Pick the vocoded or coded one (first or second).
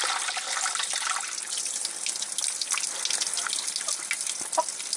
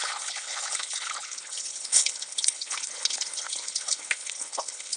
second